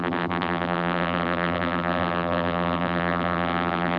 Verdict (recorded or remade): remade